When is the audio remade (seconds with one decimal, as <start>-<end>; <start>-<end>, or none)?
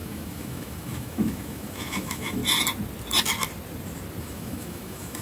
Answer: 0.0-2.4; 4.2-5.2